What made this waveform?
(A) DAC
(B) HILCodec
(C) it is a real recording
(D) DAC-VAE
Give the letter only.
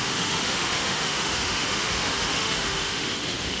D